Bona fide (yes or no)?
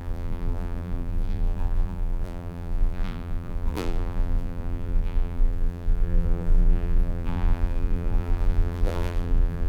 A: no